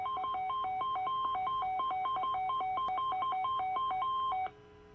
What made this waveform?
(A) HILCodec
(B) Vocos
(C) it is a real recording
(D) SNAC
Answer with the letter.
C